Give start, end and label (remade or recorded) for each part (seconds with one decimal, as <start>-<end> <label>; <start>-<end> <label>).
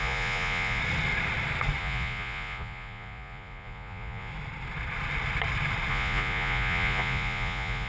0.0-0.8 remade; 0.8-1.8 recorded; 1.8-4.3 remade; 4.3-5.9 recorded; 5.9-7.9 remade